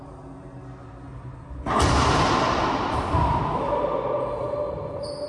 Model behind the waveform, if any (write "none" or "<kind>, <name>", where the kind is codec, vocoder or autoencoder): none